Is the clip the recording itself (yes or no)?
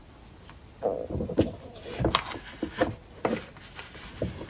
yes